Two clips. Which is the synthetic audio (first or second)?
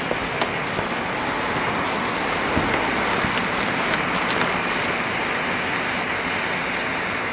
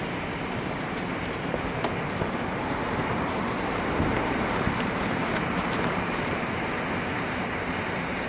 second